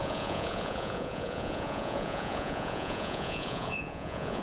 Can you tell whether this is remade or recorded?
remade